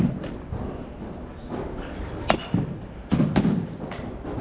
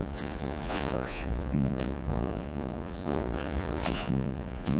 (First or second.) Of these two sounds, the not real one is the second